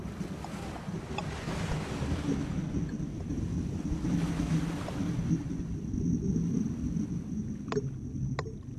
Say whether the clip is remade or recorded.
recorded